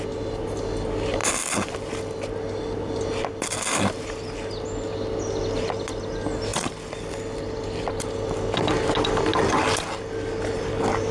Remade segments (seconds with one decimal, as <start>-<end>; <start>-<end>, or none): none